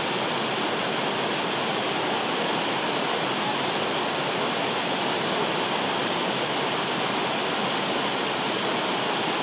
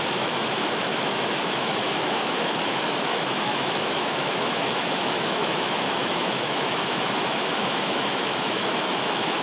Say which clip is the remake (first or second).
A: second